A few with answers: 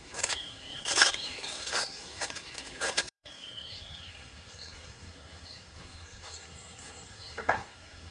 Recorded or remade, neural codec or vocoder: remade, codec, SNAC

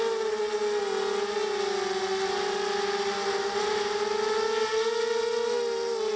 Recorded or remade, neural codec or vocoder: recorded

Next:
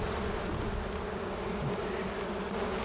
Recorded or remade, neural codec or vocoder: recorded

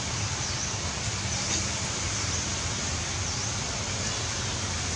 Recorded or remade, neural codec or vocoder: recorded